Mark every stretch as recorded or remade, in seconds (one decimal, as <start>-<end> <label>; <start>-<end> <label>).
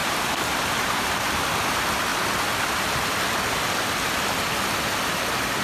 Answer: 0.0-1.3 remade; 1.3-5.6 recorded